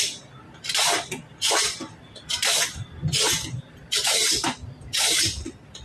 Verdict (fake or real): real